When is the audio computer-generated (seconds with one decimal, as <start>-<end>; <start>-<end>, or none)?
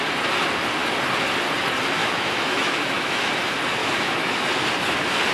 2.0-3.3; 3.8-4.4